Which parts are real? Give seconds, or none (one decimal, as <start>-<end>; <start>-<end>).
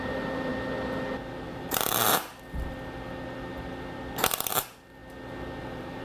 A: 0.5-1.5; 2.3-4.5; 5.0-5.6